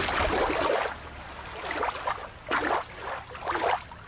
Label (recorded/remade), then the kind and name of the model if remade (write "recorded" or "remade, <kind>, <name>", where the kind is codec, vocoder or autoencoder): recorded